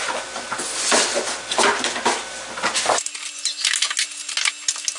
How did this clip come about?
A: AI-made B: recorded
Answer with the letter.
B